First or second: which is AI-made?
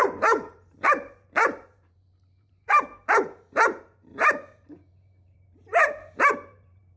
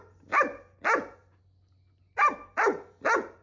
first